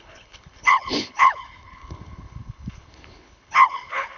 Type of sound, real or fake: fake